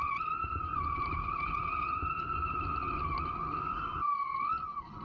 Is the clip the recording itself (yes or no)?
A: yes